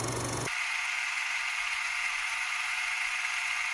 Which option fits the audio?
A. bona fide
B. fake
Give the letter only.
B